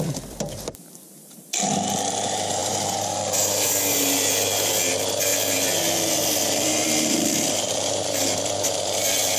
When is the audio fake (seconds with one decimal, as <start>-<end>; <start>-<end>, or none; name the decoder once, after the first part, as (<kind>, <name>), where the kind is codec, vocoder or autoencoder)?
0.0-5.3 (vocoder, BigVGAN v2); 6.1-9.4